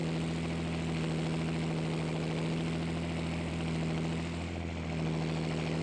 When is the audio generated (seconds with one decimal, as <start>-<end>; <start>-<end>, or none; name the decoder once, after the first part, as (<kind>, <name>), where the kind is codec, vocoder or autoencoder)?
none